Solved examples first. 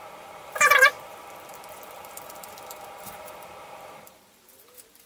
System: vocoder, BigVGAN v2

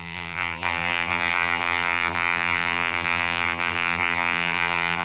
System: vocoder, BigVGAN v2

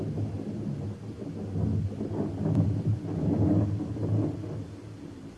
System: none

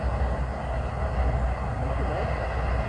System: none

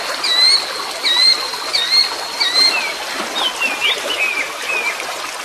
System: none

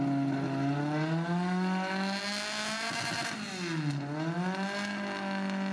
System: none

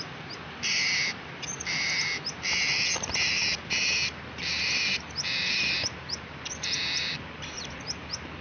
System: vocoder, BigVGAN v2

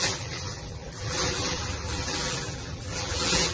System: vocoder, BigVGAN v2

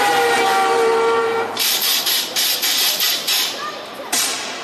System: vocoder, BigVGAN v2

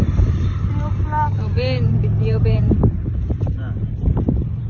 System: vocoder, BigVGAN v2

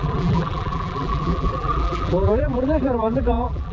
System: vocoder, BigVGAN v2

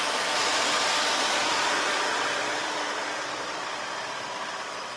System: vocoder, BigVGAN v2